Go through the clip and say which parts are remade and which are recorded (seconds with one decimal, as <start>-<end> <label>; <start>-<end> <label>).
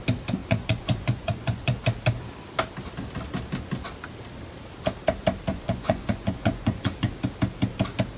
0.0-0.4 recorded; 0.4-1.8 remade; 1.8-5.5 recorded; 5.5-7.1 remade; 7.1-8.2 recorded